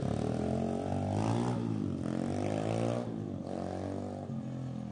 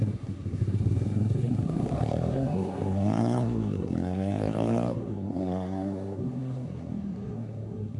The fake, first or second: second